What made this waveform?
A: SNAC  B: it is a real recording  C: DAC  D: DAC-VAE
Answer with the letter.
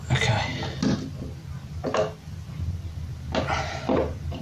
B